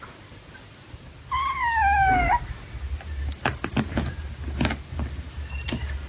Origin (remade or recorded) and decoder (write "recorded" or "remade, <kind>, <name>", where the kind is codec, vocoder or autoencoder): recorded